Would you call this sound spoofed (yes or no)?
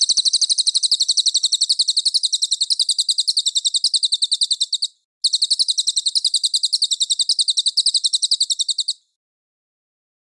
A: no